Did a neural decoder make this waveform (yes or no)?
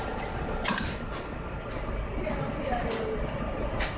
no